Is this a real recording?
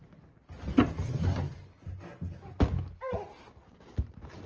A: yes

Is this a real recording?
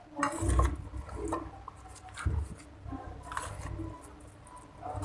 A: yes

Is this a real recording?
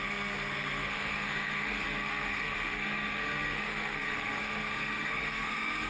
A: no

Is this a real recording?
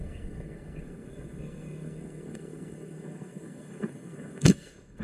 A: no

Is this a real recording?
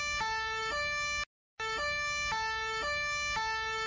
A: yes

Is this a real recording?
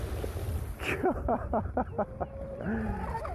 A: yes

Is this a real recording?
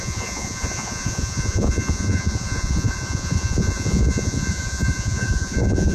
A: no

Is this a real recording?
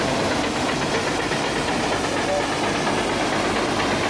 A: yes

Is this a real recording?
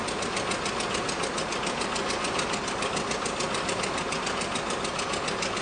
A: yes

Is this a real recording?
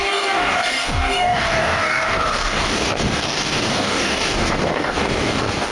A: no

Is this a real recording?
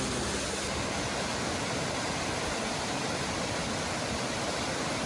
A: yes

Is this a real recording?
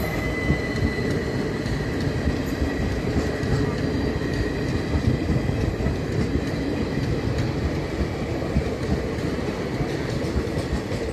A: yes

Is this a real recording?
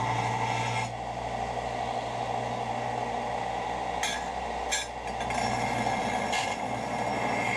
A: yes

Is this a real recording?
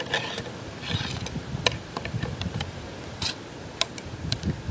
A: no